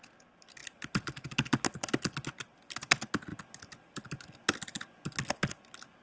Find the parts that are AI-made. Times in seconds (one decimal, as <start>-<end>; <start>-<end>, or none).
0.6-1.6